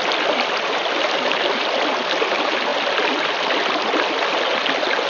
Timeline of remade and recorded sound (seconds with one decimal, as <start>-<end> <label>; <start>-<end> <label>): 0.0-5.1 recorded